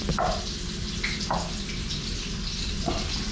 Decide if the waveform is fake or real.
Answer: real